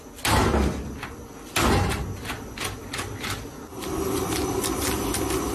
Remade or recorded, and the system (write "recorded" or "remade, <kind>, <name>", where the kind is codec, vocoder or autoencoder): recorded